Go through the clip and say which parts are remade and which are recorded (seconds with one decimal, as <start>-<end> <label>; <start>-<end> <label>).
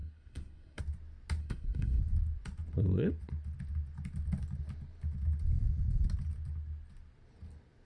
0.0-0.8 remade; 0.8-1.4 recorded; 1.4-2.0 remade; 2.0-7.8 recorded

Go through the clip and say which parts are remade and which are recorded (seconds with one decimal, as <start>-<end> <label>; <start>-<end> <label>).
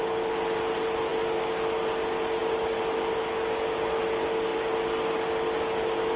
0.0-6.2 recorded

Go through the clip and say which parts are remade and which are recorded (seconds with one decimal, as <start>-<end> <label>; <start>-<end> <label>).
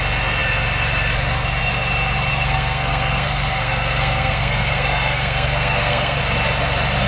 0.0-2.3 recorded; 2.3-6.2 remade; 6.2-7.1 recorded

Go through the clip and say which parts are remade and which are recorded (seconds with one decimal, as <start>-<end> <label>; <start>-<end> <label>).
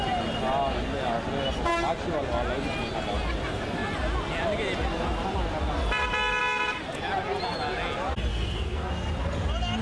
0.0-8.3 recorded; 8.3-8.9 remade; 8.9-9.8 recorded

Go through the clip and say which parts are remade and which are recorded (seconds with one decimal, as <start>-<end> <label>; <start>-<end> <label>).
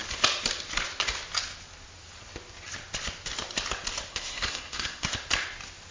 0.0-4.1 recorded; 4.1-5.1 remade; 5.1-5.9 recorded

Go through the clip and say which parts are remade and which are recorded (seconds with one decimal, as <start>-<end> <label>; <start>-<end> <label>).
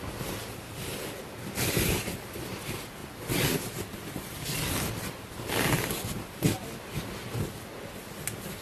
0.0-8.6 recorded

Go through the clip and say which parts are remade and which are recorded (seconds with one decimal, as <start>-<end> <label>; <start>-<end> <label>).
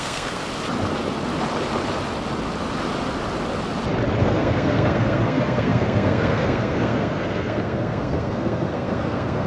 0.0-0.5 remade; 0.5-4.2 recorded; 4.2-9.5 remade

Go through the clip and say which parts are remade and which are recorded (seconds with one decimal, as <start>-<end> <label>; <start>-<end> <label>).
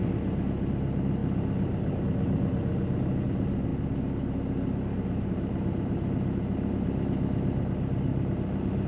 0.0-8.9 recorded